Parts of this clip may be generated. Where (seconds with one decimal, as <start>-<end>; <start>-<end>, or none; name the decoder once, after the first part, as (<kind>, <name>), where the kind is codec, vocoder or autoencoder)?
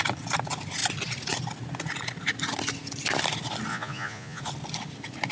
3.7-4.4 (vocoder, Vocos)